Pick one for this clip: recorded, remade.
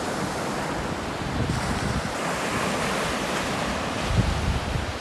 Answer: recorded